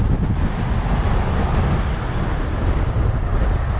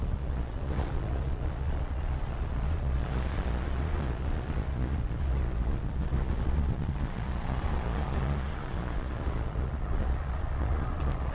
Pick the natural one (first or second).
first